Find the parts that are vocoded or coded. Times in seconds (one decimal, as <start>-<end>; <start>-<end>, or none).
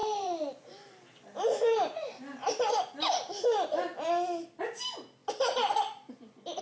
0.0-2.7